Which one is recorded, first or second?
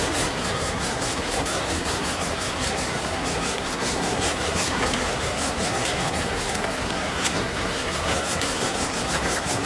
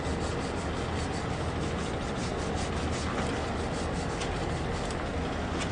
second